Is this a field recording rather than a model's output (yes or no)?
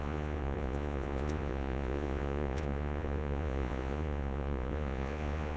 no